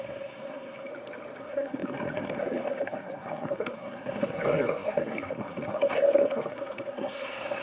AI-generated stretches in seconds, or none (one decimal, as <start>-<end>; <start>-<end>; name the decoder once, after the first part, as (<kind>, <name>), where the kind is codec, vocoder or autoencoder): 0.0-0.9 (codec, SNAC); 1.4-7.6